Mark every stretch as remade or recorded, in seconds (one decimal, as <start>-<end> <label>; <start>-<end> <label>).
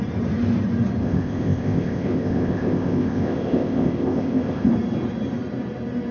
0.0-1.0 recorded; 1.0-4.7 remade; 4.7-6.1 recorded